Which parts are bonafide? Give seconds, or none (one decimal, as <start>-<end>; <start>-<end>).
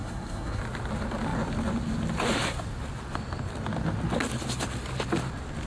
0.6-5.7